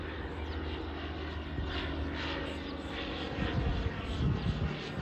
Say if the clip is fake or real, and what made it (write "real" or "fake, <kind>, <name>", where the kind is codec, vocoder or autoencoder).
real